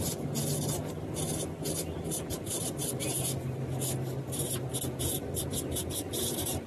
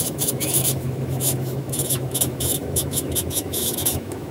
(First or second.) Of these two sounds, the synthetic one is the second